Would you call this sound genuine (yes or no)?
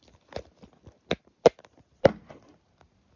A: yes